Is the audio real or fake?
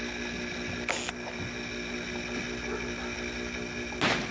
real